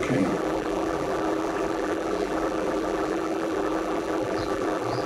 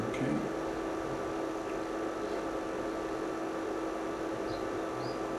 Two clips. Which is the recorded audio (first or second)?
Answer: second